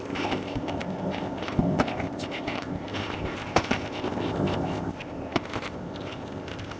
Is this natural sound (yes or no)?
no